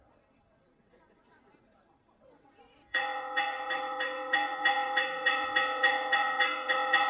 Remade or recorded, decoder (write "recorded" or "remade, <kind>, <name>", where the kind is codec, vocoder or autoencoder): remade, vocoder, WaveNeXt